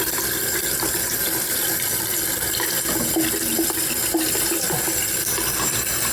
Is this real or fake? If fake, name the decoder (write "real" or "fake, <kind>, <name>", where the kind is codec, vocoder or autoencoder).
real